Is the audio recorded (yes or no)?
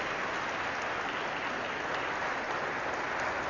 yes